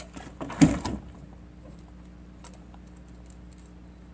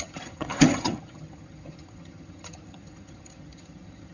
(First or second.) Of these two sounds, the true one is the first